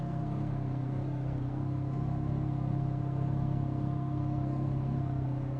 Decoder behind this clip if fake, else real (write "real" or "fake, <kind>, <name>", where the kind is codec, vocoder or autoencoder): fake, codec, SNAC